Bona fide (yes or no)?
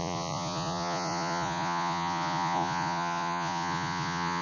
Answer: no